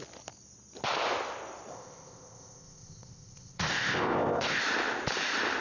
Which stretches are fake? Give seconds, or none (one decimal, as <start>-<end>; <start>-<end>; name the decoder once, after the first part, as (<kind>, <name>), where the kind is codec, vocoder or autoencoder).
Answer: 1.7-4.6 (codec, ZipCodec)

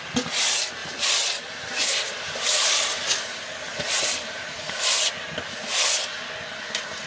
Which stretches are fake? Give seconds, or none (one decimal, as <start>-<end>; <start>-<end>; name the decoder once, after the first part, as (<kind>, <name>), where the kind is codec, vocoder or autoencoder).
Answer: 0.8-5.1 (vocoder, BigVGAN v2)

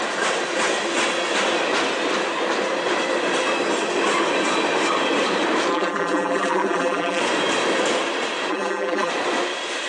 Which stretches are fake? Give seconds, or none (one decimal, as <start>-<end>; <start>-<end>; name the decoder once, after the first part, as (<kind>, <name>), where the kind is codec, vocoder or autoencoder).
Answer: 5.7-7.2 (vocoder, BigVGAN v2); 8.5-9.1

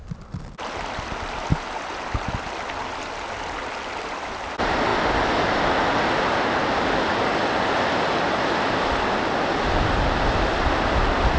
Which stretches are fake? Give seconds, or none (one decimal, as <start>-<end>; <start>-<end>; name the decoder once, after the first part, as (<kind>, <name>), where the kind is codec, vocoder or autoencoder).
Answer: none

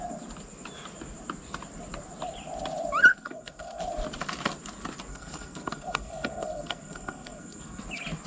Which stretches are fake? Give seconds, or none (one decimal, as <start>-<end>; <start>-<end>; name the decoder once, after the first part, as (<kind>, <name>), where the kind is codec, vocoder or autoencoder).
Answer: 3.1-3.8 (codec, SNAC); 5.1-7.8